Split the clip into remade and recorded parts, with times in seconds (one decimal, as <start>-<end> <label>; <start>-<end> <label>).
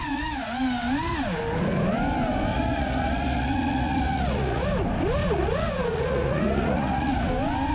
0.0-2.5 recorded; 2.5-4.6 remade; 4.6-5.2 recorded; 5.2-7.3 remade; 7.3-7.7 recorded